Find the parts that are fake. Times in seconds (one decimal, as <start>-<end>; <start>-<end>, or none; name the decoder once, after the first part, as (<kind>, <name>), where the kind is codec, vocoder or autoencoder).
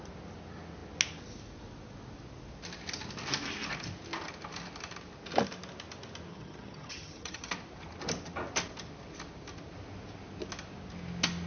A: 6.3-7.5 (vocoder, HiFi-GAN)